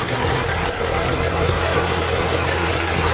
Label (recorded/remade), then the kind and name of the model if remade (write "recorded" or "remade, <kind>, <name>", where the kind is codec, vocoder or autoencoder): remade, codec, SNAC